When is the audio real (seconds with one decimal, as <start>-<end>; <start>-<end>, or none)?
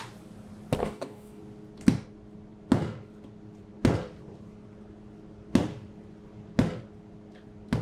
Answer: 0.0-0.8; 1.4-7.8